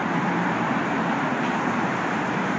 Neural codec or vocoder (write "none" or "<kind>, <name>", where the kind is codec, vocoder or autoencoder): vocoder, BigVGAN v2